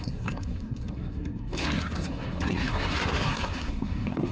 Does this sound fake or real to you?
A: fake